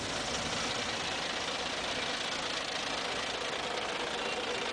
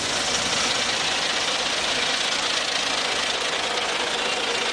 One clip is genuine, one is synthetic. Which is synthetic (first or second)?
second